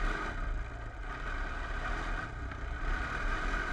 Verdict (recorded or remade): recorded